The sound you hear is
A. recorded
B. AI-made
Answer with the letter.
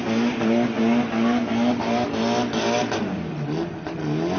A